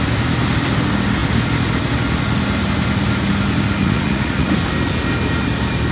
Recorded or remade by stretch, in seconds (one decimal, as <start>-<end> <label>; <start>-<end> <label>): 0.0-3.8 recorded; 3.8-4.5 remade; 4.5-5.9 recorded